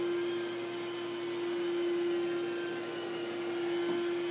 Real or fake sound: real